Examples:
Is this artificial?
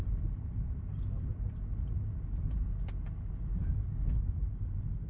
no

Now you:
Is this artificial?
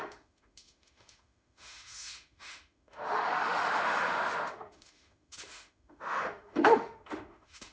yes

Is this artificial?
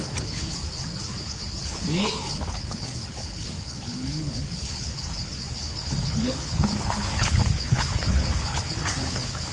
yes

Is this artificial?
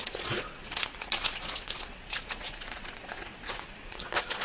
yes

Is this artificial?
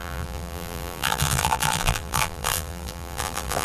yes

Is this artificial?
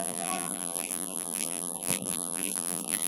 yes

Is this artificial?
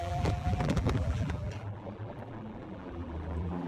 yes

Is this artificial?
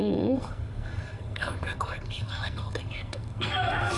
yes